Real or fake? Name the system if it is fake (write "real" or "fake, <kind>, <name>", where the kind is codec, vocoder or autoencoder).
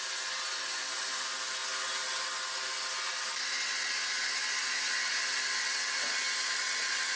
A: real